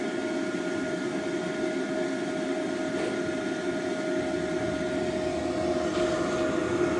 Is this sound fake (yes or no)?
no